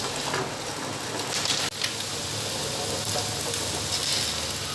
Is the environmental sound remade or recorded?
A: recorded